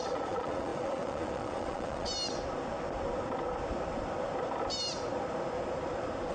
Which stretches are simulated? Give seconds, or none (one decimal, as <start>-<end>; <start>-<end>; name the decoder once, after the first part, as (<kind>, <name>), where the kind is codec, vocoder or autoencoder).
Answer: 0.0-2.1 (vocoder, Vocos)